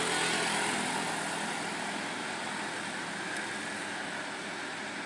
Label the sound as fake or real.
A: real